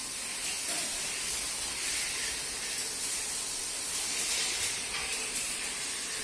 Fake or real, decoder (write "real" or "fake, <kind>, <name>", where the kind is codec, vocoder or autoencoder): real